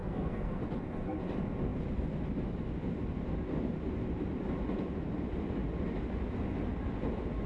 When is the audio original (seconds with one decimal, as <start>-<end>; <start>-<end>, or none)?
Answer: 0.6-7.5

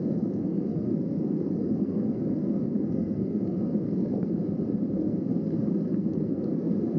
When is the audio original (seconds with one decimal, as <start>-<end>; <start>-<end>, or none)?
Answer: 4.4-4.9

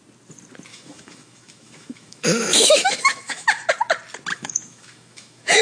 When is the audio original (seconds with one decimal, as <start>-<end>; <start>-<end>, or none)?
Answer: 0.0-0.7; 3.7-4.3

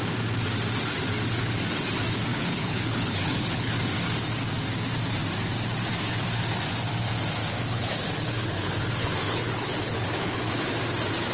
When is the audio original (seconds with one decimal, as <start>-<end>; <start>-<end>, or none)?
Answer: 0.0-2.3; 3.7-7.4; 10.6-11.3